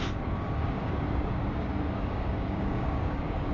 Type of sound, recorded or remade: remade